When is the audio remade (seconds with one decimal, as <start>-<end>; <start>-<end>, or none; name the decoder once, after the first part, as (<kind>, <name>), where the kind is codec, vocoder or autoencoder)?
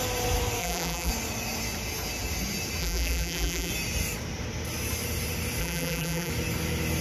0.6-1.1 (vocoder, BigVGAN v2); 2.8-3.7; 5.6-6.3